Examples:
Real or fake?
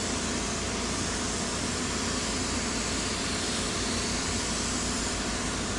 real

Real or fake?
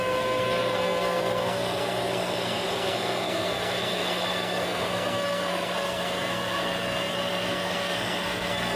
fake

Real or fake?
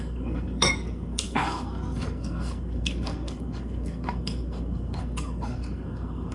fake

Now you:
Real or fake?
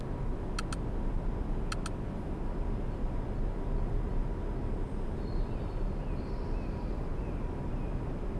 real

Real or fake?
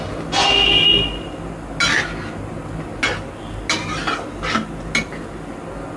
real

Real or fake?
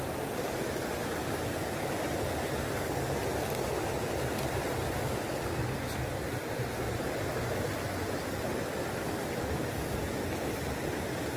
real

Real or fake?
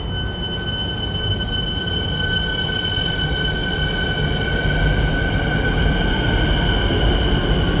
real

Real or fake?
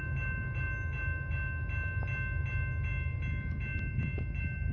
real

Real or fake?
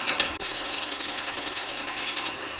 fake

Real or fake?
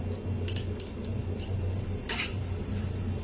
real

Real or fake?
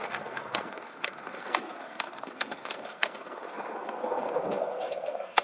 fake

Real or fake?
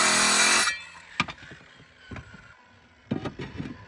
real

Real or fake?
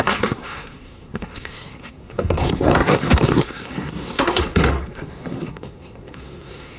fake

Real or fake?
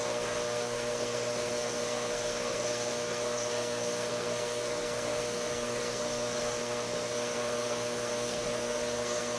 fake